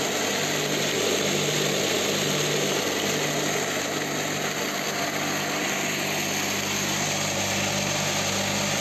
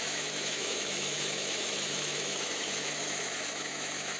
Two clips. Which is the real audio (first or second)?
first